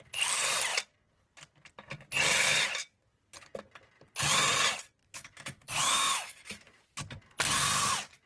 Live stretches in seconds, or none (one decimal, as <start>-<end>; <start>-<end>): 0.0-5.0; 6.8-8.3